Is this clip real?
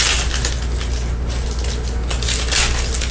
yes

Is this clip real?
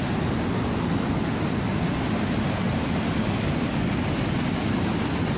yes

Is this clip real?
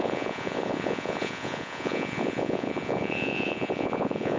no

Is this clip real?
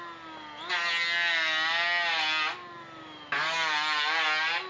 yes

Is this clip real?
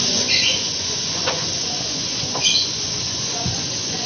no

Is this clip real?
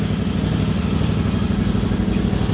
yes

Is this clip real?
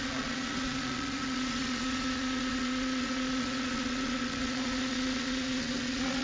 no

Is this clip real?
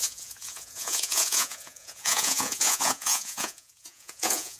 no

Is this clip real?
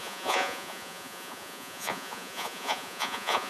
no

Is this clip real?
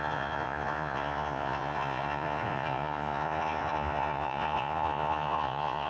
no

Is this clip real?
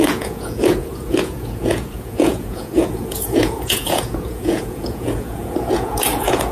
no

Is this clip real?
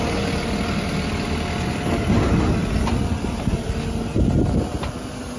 yes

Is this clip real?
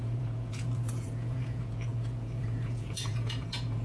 no